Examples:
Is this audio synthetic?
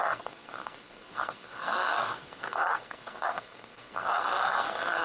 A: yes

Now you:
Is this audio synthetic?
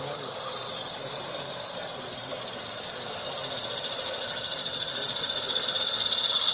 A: no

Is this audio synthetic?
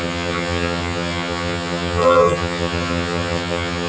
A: yes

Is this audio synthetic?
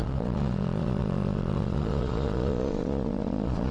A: yes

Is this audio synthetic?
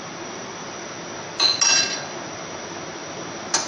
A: no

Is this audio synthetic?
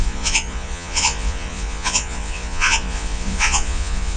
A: yes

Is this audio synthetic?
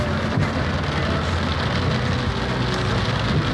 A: no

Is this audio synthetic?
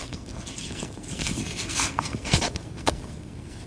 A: yes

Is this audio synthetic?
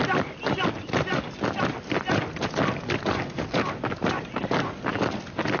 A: no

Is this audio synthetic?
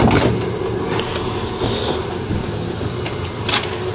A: no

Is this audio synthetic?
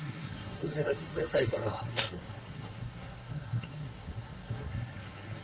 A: yes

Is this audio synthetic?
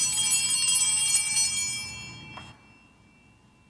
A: no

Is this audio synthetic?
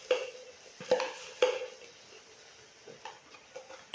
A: no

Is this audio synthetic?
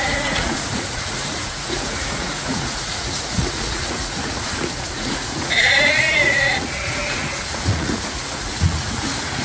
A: yes